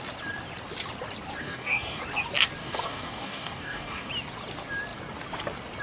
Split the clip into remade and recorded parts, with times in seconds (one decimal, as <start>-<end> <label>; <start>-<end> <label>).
0.0-1.4 recorded; 1.4-2.0 remade; 2.0-2.6 recorded; 2.6-4.1 remade; 4.1-5.8 recorded